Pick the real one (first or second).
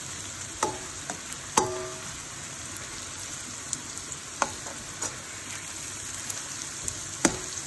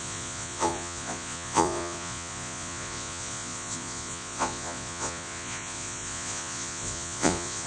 first